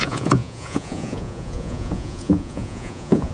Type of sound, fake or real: fake